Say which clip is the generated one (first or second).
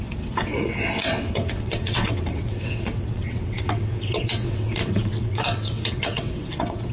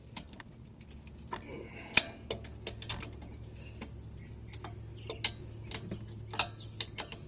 first